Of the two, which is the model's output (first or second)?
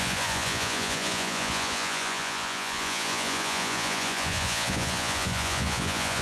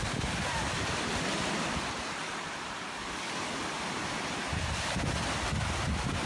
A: first